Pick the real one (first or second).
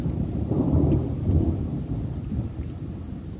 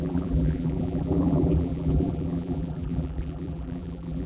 first